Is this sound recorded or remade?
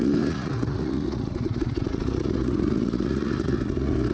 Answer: remade